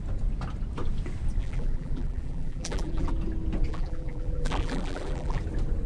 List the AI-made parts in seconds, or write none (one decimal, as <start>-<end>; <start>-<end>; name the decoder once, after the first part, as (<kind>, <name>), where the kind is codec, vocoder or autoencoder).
1.4-3.1 (vocoder, BigVGAN v2); 3.7-5.4